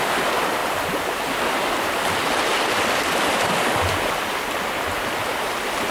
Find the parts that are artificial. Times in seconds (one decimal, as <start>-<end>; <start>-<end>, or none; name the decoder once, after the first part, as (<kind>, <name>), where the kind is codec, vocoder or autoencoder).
none